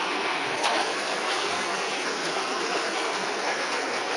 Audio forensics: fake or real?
fake